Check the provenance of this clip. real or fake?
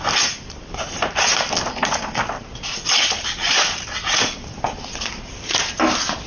real